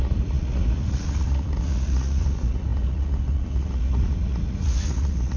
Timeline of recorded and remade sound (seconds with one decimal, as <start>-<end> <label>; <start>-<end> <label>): 0.0-5.4 remade